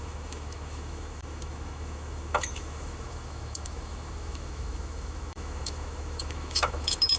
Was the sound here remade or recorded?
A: remade